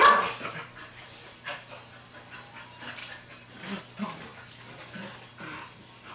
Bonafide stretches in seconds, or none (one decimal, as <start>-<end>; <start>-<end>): 0.0-0.8; 1.7-3.0; 3.8-6.1